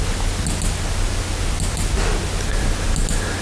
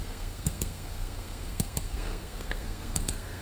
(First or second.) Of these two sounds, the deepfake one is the second